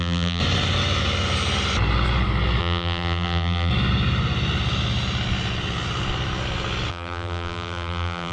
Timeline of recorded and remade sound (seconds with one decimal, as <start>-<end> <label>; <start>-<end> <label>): 0.0-0.4 remade; 0.4-2.6 recorded; 2.6-3.7 remade; 3.7-6.9 recorded; 6.9-8.3 remade